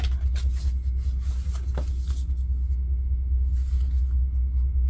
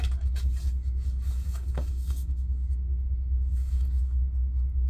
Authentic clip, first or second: first